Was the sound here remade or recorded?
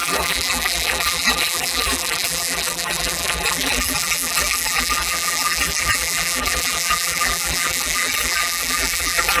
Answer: remade